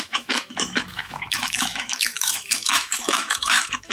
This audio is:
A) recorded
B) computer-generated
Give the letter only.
B